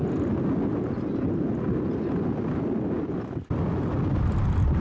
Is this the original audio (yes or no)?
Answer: yes